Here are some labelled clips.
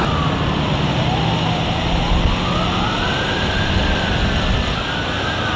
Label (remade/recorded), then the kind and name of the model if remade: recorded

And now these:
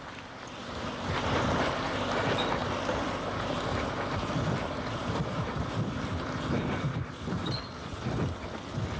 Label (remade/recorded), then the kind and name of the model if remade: recorded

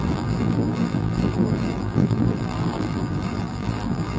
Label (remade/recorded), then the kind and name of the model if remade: remade, vocoder, BigVGAN v2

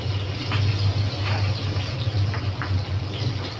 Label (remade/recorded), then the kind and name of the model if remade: recorded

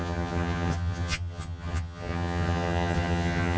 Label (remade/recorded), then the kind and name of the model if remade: remade, vocoder, HiFi-GAN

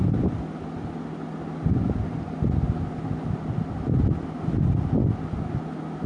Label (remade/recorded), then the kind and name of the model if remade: recorded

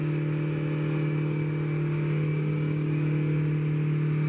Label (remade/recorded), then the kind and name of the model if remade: recorded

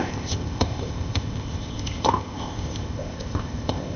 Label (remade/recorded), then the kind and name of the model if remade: remade, codec, ZipCodec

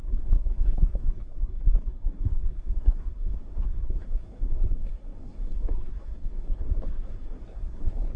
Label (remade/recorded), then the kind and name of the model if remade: remade, codec, SNAC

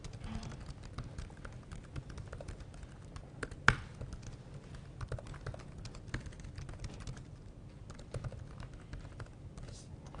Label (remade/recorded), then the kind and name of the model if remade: recorded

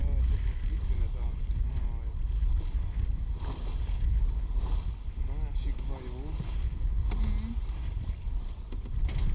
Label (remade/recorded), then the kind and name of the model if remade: recorded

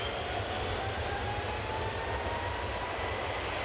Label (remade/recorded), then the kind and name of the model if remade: recorded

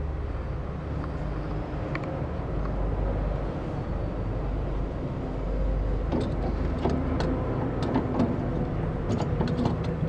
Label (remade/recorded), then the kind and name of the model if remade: recorded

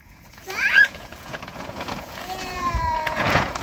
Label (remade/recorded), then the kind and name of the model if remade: remade, vocoder, Vocos